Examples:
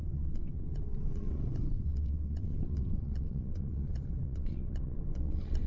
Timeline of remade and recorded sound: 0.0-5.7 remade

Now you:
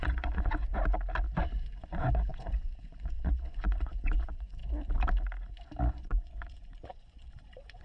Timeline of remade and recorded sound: 0.0-0.7 remade; 0.7-1.4 recorded; 1.4-4.6 remade; 4.6-5.9 recorded; 5.9-7.8 remade